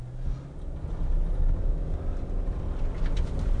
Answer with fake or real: real